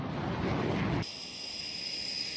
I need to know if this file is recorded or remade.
recorded